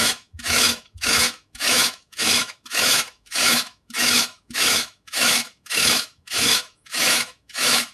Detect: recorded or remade remade